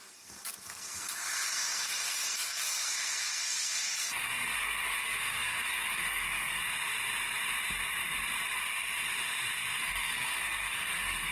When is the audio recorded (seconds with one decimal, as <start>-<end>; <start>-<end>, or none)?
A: 6.6-9.8